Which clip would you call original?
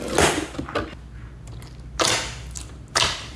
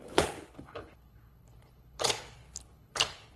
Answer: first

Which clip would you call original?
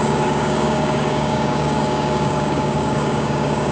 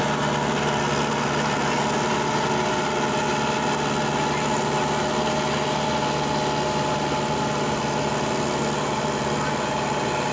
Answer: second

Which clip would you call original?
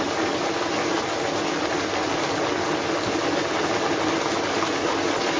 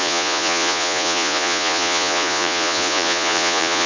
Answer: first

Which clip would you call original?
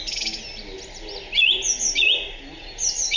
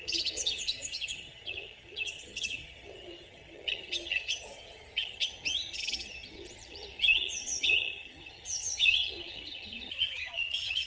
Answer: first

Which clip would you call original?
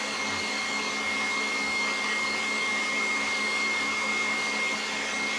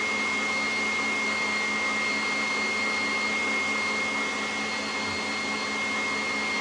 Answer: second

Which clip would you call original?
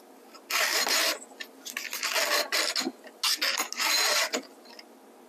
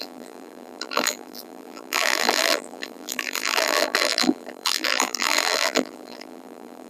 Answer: first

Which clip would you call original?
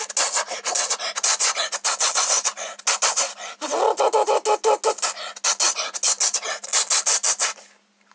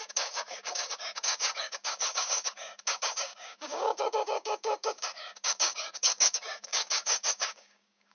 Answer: first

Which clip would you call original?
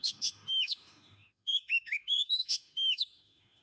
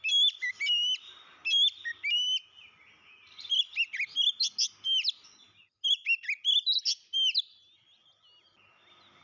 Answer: second